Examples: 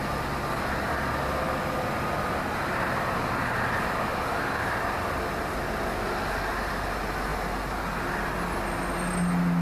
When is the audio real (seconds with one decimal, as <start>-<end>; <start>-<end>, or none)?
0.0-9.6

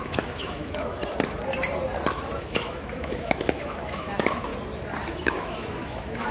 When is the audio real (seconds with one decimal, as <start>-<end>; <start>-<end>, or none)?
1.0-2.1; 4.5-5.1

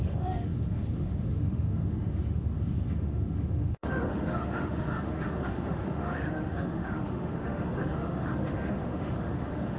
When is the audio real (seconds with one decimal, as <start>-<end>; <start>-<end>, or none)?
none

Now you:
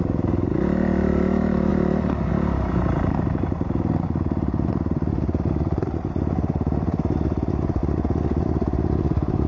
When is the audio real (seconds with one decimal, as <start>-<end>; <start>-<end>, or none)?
1.7-2.3; 7.8-8.4

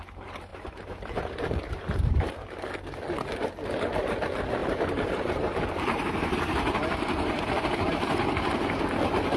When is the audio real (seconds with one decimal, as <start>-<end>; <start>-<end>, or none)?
0.0-0.5; 2.2-4.6; 8.8-9.4

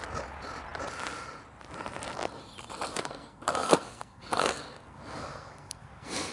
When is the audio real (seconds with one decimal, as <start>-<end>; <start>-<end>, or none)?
0.0-2.9